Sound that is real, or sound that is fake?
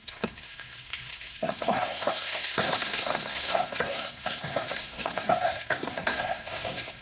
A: fake